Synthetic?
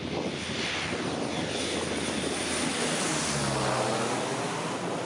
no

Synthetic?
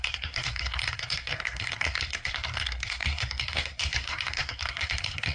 yes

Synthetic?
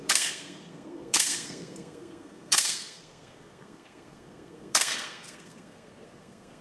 yes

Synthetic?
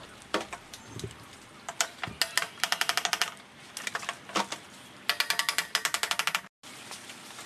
no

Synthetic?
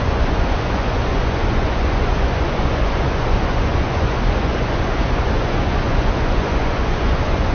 yes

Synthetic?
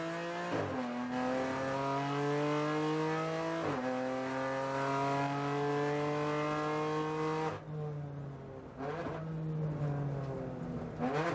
no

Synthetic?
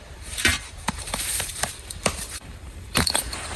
yes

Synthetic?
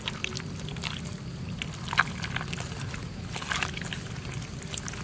no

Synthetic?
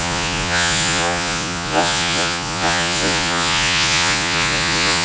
yes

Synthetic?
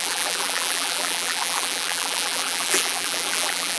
yes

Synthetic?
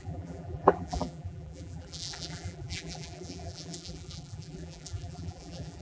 yes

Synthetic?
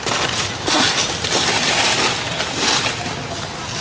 no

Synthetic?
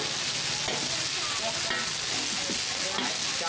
no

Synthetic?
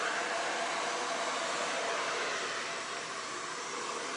no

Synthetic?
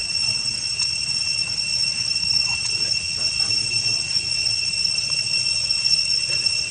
yes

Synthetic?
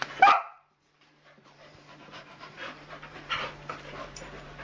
yes